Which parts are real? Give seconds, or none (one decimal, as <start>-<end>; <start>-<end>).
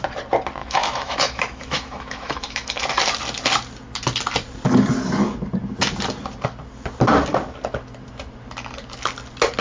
0.0-0.6; 2.8-9.6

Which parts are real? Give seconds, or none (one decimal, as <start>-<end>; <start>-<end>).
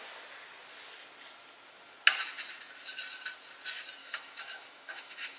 0.0-4.0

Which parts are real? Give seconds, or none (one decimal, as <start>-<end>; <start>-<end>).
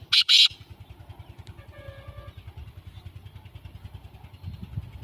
0.0-5.0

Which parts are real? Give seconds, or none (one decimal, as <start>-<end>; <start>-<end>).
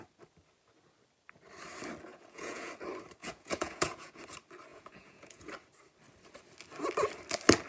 0.0-2.1; 2.7-3.2; 4.2-4.7; 5.5-7.7